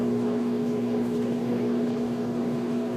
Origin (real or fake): fake